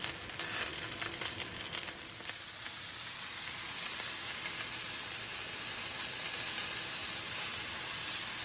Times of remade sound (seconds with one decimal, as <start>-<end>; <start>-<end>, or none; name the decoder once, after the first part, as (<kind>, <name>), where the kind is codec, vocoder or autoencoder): 7.0-7.6 (vocoder, BigVGAN v2)